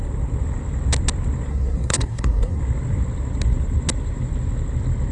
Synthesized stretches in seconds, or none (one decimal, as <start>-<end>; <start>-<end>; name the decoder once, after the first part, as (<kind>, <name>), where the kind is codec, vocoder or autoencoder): 1.5-2.6 (codec, SNAC)